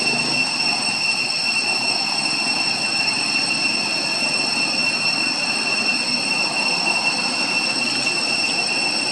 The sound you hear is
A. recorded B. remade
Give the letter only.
A